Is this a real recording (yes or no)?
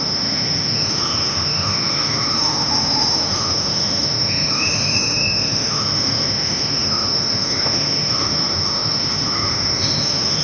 no